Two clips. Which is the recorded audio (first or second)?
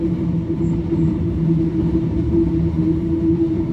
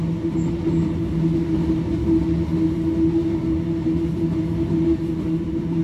second